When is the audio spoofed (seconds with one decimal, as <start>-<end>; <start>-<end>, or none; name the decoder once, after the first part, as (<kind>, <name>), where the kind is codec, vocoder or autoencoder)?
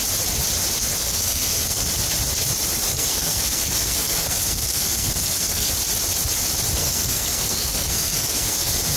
1.0-1.9 (codec, SNAC); 2.9-5.7; 6.8-9.0